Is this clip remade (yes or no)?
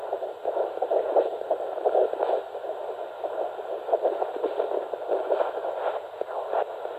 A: no